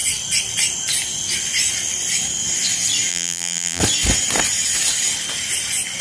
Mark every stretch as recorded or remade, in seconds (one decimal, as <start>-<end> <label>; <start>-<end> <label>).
0.0-3.1 recorded; 3.1-3.8 remade; 3.8-6.0 recorded